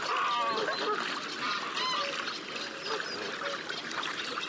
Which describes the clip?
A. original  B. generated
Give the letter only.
A